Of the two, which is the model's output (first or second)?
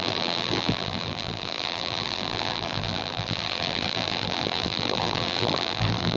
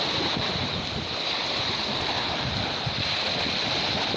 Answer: first